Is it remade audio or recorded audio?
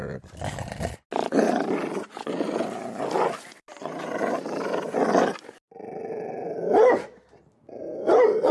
recorded